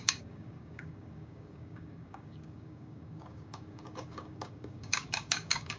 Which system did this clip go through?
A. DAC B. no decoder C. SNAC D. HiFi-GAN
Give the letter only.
A